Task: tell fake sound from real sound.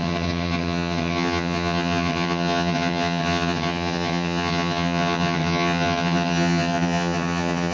fake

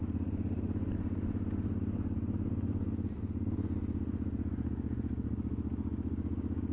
real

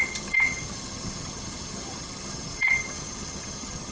fake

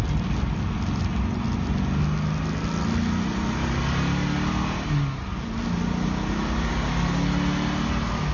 real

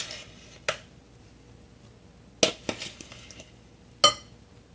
real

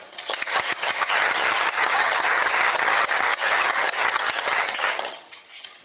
fake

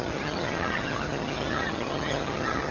fake